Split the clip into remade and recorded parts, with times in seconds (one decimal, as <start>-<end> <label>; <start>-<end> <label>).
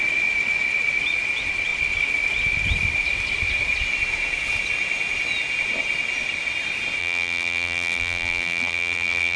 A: 0.0-7.0 recorded; 7.0-9.4 remade